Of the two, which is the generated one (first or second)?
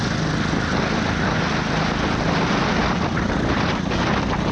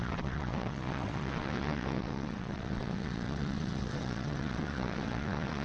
second